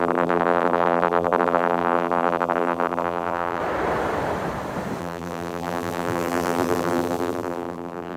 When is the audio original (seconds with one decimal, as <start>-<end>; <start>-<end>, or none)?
3.6-5.0